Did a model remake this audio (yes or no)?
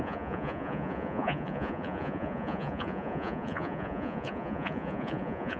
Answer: yes